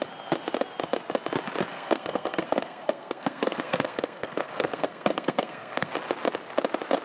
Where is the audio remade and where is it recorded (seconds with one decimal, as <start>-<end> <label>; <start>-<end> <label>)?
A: 0.0-1.7 recorded; 1.7-5.9 remade; 5.9-7.0 recorded